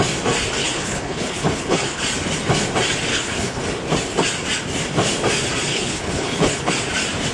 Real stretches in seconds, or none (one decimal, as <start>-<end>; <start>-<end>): 0.0-0.6; 2.0-3.1; 3.6-5.7; 6.7-7.3